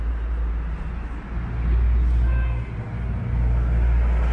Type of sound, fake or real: real